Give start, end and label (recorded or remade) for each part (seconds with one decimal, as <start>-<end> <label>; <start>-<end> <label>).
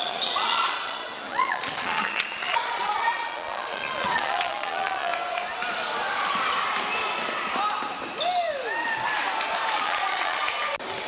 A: 0.0-5.1 remade; 5.1-9.7 recorded; 9.7-10.4 remade; 10.4-11.1 recorded